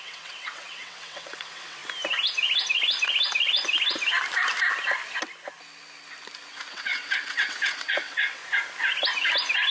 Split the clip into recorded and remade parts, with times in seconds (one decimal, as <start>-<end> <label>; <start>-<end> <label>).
0.0-1.8 remade; 1.8-6.7 recorded; 6.7-8.4 remade; 8.4-9.7 recorded